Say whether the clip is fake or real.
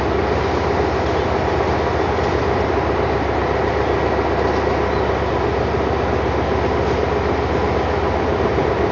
real